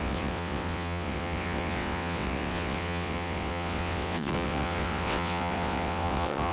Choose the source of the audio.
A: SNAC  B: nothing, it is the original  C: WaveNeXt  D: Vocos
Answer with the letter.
C